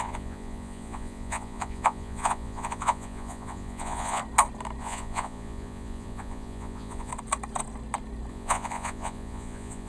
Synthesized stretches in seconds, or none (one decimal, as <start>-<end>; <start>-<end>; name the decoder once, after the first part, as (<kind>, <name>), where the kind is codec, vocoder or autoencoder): 0.0-4.2 (vocoder, Vocos); 4.8-7.1; 8.3-9.9